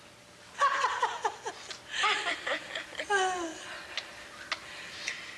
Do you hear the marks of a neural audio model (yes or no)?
no